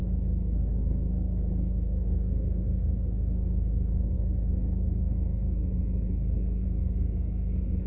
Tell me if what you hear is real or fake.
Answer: fake